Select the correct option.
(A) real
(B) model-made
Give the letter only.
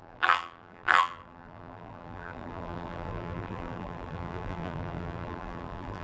B